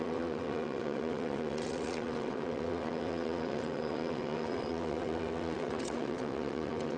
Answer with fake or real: fake